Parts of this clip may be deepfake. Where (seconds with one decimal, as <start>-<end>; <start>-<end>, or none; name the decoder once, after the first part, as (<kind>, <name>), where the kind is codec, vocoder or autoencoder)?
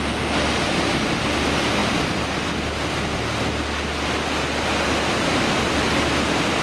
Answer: none